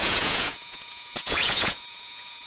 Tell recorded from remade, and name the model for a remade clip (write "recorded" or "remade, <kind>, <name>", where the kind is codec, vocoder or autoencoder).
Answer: remade, vocoder, Vocos